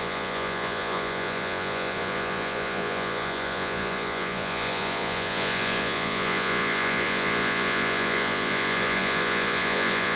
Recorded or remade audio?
remade